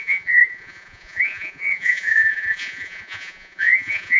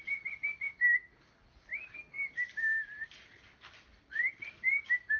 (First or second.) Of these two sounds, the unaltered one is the second